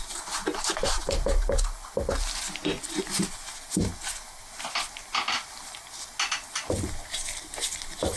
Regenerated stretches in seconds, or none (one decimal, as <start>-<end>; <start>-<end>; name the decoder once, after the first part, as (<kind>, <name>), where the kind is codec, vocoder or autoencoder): none